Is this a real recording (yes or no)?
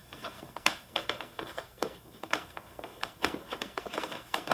no